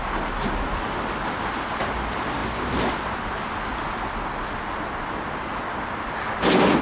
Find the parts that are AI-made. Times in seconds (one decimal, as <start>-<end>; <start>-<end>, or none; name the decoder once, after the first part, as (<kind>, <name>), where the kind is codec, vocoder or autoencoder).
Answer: none